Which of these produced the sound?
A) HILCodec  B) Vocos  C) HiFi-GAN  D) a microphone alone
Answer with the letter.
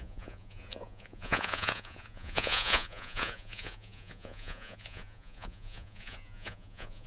B